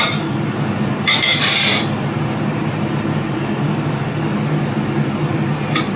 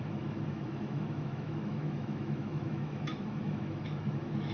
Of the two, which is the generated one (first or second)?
second